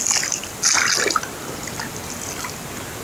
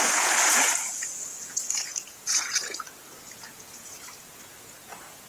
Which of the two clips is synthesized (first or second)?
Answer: second